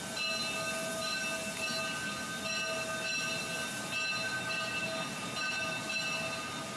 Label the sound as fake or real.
real